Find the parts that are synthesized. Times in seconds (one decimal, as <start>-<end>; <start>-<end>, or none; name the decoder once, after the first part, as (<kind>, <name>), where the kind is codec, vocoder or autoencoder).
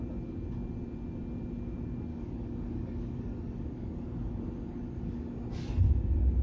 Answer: 2.1-5.9 (codec, DAC)